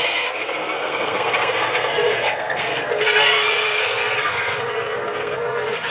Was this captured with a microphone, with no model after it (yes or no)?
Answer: no